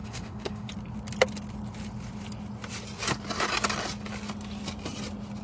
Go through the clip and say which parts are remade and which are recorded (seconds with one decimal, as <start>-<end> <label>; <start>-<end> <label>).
0.0-0.7 remade; 0.7-5.4 recorded